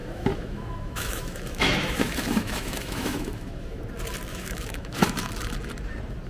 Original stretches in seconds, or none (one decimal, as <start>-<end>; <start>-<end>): 3.8-4.3; 5.3-6.3